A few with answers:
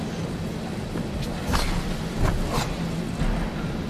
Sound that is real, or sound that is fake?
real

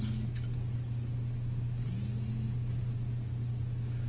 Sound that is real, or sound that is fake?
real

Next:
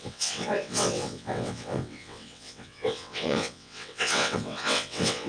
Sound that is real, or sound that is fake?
fake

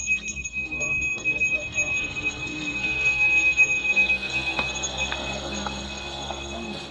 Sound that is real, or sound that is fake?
fake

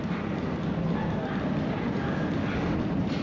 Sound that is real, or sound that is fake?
real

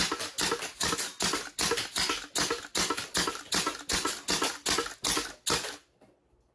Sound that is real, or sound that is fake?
real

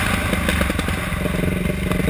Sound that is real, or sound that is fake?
real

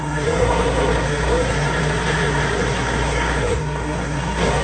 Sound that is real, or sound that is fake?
fake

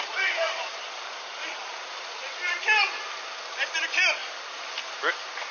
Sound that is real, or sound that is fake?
real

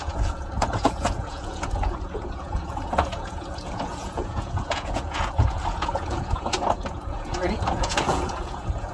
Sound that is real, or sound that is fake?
fake